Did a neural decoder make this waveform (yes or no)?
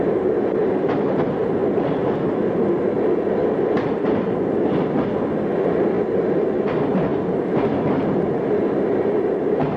no